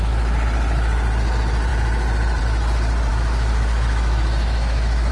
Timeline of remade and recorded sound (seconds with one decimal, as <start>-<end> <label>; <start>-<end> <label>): 0.0-3.1 recorded; 3.1-5.1 remade